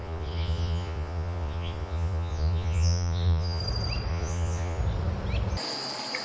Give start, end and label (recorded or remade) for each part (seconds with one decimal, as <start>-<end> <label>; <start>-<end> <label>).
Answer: 0.0-3.6 remade; 3.6-4.1 recorded; 4.1-4.8 remade; 4.8-6.2 recorded